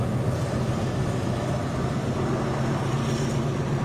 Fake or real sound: real